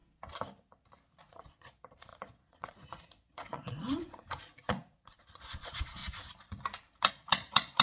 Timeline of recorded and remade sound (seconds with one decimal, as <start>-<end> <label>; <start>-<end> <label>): 0.0-1.2 recorded; 1.2-6.0 remade; 6.0-7.1 recorded; 7.1-7.8 remade

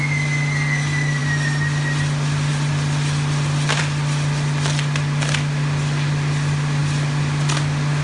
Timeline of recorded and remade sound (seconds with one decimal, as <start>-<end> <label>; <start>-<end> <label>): 0.0-8.0 recorded